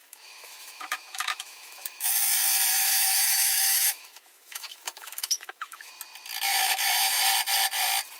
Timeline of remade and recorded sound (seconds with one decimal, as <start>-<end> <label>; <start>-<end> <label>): 0.0-2.1 remade; 2.1-2.8 recorded; 2.8-5.9 remade; 5.9-6.5 recorded; 6.5-7.2 remade; 7.2-8.2 recorded